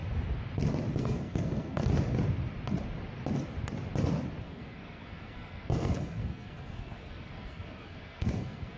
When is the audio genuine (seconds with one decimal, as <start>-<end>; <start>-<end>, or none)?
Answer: 0.0-1.0; 1.8-4.4